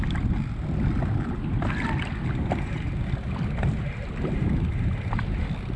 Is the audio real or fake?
real